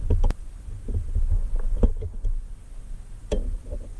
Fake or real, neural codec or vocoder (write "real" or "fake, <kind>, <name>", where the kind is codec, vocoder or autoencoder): real